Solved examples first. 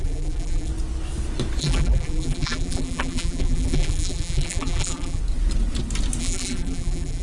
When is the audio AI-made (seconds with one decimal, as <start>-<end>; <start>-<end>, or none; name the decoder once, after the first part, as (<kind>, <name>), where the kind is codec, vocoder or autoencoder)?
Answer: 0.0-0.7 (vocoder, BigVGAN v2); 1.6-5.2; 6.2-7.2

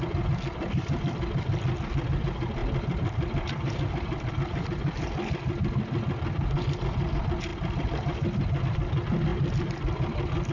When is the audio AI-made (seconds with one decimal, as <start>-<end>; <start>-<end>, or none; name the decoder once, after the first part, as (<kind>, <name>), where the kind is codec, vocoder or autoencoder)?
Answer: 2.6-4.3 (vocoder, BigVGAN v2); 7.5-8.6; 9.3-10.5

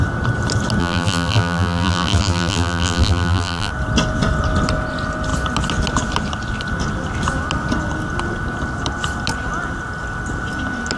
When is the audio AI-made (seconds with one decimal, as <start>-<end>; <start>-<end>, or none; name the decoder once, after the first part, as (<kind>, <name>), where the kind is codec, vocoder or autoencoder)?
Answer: 0.8-3.7 (vocoder, BigVGAN v2)

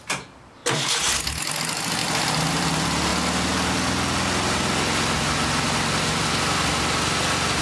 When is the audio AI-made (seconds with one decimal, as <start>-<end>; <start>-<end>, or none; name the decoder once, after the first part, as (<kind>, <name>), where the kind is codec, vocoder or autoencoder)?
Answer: 0.0-0.6 (vocoder, BigVGAN v2); 1.6-2.0; 2.5-3.1

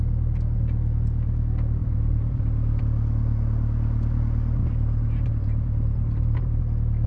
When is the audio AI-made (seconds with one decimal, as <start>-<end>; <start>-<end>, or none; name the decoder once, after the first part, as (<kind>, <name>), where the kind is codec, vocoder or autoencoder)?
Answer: 1.8-2.8 (vocoder, BigVGAN v2); 4.6-6.6

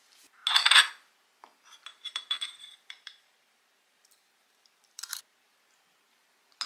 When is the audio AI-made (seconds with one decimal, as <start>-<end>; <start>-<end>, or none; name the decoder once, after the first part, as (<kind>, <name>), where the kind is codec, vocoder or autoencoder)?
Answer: 1.9-5.5 (vocoder, BigVGAN v2)

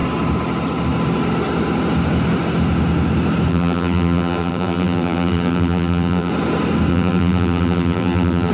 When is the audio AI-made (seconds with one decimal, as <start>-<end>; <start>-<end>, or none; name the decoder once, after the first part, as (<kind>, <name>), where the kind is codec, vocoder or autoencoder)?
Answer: 3.5-6.3 (vocoder, BigVGAN v2); 6.9-8.5

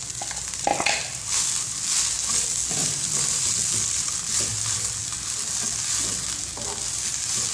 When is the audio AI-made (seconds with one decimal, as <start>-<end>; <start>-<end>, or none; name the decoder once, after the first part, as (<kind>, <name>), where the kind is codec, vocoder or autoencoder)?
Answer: none